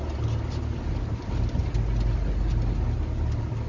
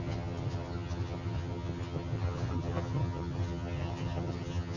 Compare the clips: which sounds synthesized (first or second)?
second